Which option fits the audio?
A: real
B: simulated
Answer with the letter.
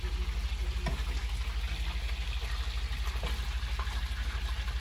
A